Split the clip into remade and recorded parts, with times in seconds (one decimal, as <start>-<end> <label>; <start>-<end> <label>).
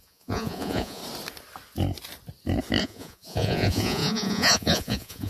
0.0-1.0 remade; 1.0-2.8 recorded; 2.8-5.3 remade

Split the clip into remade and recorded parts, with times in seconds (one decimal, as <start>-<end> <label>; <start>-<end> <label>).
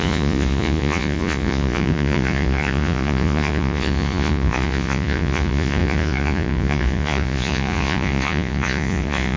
0.0-9.4 remade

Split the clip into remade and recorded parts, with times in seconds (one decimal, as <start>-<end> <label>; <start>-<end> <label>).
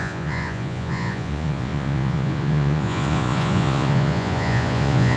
0.0-5.2 remade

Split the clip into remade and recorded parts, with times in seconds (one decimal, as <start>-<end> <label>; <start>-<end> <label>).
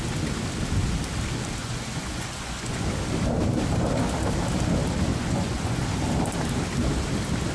0.0-1.6 recorded; 1.6-2.9 remade; 2.9-5.1 recorded; 5.1-5.8 remade; 5.8-7.5 recorded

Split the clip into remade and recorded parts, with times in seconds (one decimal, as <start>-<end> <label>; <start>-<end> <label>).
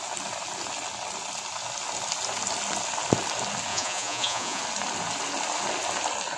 0.0-3.7 recorded; 3.7-4.6 remade; 4.6-6.4 recorded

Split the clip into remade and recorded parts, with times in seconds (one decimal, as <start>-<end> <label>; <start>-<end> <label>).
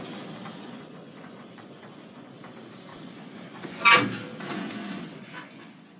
0.0-0.5 recorded; 0.5-2.3 remade; 2.3-2.9 recorded; 2.9-3.8 remade; 3.8-4.5 recorded; 4.5-6.0 remade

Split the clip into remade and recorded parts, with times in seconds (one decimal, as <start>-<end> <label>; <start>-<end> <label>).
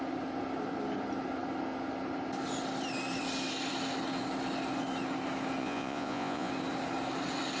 0.0-5.6 recorded; 5.6-6.5 remade; 6.5-7.6 recorded